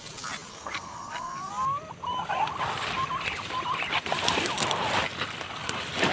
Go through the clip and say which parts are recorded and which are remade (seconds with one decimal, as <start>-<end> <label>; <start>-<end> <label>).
0.0-0.5 recorded; 0.5-1.5 remade; 1.5-6.1 recorded